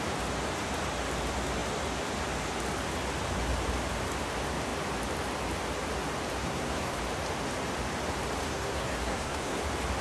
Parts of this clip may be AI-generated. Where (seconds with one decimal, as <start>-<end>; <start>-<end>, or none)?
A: 6.4-7.0; 8.4-9.6